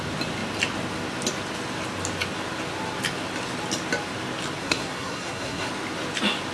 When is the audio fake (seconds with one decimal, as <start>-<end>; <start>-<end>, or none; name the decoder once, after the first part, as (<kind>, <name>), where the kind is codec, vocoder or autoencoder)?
4.6-5.7 (codec, SNAC)